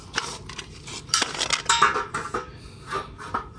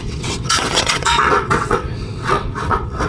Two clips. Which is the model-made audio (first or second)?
second